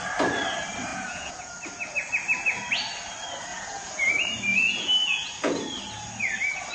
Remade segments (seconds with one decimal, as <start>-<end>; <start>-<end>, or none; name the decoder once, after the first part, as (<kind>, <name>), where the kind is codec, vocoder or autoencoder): 0.9-1.5 (vocoder, Vocos); 3.5-4.1; 4.5-5.3